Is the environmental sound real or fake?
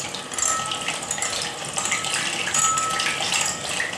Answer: real